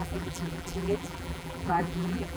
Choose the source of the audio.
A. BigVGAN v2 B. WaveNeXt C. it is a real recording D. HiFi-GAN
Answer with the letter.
A